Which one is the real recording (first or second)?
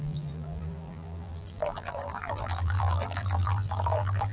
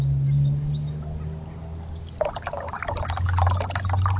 second